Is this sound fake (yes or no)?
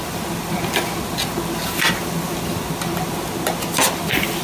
no